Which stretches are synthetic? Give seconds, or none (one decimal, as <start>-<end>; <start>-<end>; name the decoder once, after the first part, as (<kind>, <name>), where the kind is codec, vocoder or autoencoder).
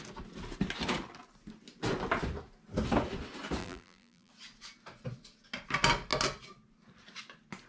3.6-4.3 (vocoder, BigVGAN v2)